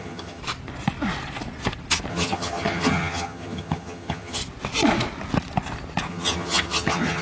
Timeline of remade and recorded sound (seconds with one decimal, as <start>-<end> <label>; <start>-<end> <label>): 0.0-0.4 remade; 0.4-2.1 recorded; 2.1-4.4 remade; 4.4-6.1 recorded; 6.1-7.2 remade